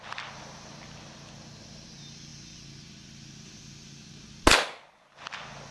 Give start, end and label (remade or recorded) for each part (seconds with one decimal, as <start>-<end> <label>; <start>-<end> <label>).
0.0-5.7 recorded